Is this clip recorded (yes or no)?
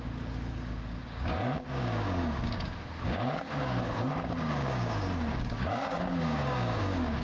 no